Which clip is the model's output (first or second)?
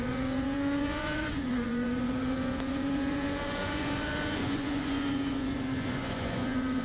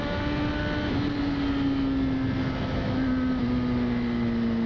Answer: first